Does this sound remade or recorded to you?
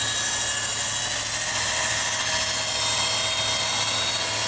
recorded